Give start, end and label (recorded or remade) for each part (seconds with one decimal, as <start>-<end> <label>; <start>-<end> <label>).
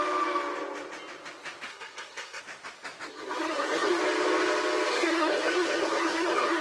0.0-1.7 recorded; 1.7-2.4 remade; 2.4-3.1 recorded; 3.1-4.0 remade; 4.0-4.9 recorded; 4.9-6.6 remade